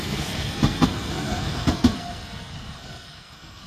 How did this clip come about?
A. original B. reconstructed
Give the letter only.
B